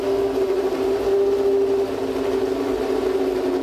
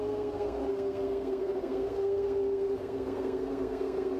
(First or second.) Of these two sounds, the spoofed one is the second